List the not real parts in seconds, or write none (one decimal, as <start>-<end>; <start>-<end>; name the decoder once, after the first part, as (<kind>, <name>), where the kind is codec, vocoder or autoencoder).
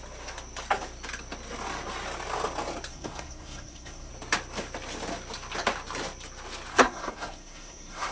2.9-4.1 (codec, SNAC); 6.7-8.1